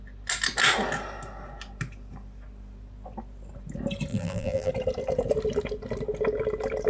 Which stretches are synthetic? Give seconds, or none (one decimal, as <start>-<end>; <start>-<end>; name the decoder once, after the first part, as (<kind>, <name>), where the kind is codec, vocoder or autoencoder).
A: 4.1-4.7 (vocoder, BigVGAN v2)